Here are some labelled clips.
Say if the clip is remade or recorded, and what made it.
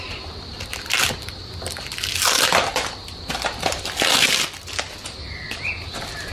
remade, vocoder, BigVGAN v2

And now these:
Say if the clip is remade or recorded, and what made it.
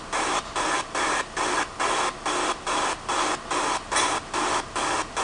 recorded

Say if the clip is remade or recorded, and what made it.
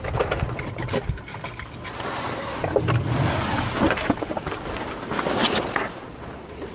recorded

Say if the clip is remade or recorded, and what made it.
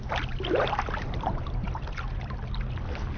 recorded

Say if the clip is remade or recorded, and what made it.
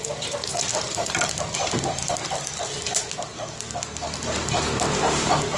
recorded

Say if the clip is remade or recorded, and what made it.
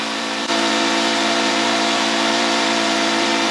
remade, vocoder, BigVGAN v2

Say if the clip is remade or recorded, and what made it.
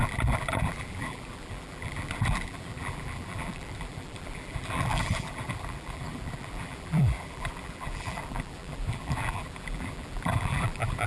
remade, vocoder, BigVGAN v2